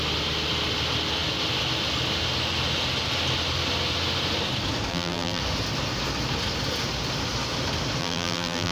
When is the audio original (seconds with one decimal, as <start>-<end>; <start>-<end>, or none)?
0.0-4.9; 5.4-8.0